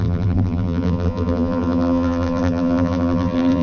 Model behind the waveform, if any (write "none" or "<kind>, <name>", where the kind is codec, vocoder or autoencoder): vocoder, BigVGAN v2